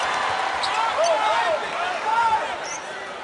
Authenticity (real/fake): real